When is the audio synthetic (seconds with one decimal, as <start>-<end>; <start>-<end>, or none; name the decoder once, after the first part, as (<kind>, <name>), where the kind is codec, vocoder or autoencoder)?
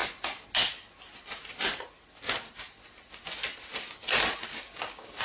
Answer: 4.5-5.2 (codec, DAC)